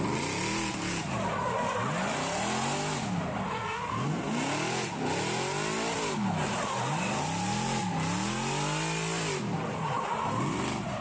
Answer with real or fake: real